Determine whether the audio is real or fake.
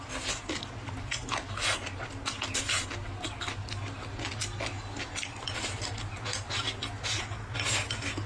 real